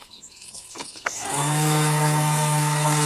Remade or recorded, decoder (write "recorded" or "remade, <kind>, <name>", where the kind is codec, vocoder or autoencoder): remade, codec, SNAC